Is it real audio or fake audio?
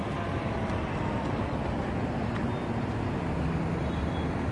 real